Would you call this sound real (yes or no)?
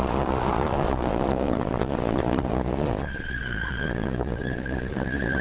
no